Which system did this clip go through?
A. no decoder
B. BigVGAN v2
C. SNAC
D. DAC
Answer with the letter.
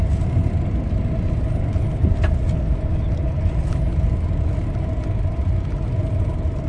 A